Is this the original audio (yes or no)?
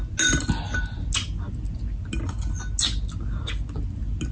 yes